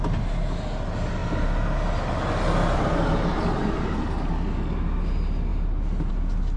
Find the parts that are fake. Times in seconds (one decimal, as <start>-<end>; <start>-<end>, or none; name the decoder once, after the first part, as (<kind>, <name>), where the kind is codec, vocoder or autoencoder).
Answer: none